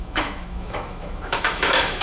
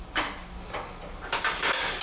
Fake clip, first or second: first